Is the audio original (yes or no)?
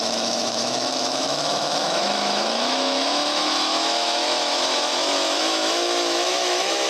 no